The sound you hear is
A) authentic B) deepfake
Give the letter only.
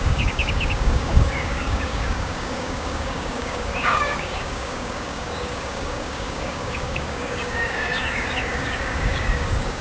B